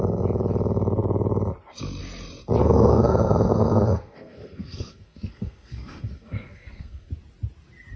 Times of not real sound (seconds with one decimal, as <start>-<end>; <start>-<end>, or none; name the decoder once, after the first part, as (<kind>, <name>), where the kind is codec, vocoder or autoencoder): 2.6-7.1 (codec, SNAC)